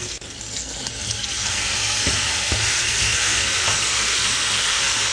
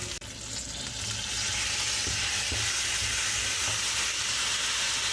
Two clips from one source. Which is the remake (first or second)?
first